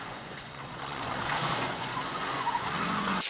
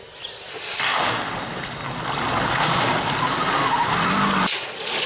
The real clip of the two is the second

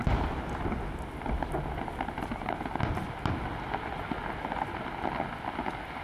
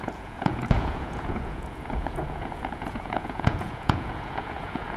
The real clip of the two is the first